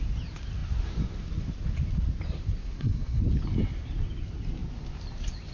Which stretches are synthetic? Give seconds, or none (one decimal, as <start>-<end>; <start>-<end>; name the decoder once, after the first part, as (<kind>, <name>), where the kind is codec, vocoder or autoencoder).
2.6-3.2 (codec, SNAC)